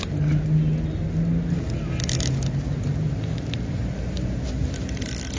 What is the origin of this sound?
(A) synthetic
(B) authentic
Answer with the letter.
B